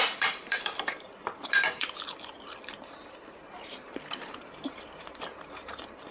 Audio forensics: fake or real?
fake